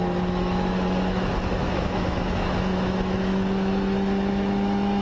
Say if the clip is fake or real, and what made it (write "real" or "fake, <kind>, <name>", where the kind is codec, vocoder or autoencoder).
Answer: fake, autoencoder, DAC-VAE